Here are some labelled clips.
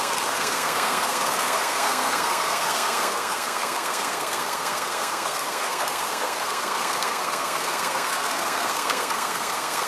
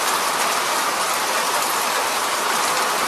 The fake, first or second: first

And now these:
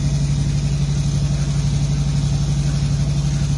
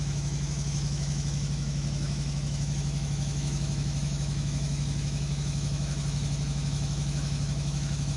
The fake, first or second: second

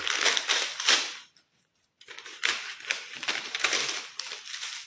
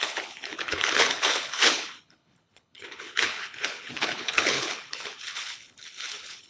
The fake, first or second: second